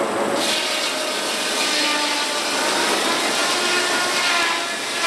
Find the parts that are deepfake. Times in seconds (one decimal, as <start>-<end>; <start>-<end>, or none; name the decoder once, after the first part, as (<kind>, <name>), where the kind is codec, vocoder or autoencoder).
none